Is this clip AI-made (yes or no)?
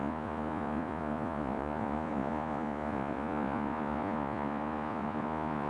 yes